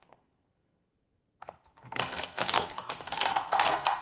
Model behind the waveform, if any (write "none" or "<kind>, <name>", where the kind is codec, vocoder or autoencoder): codec, SNAC